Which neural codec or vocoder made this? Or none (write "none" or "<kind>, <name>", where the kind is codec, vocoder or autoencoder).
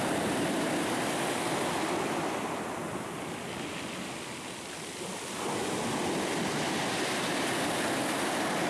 none